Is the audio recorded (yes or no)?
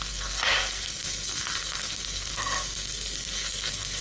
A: no